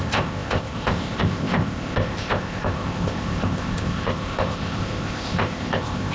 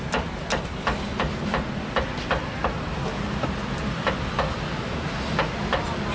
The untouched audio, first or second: second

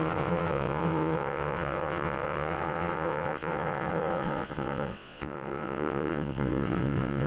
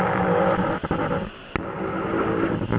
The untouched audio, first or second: second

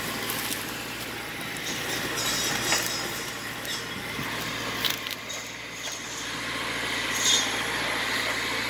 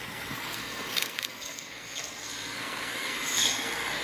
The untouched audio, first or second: first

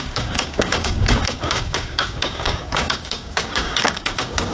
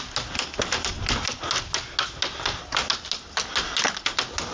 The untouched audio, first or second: second